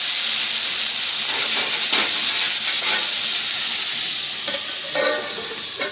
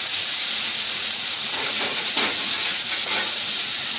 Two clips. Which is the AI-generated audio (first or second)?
second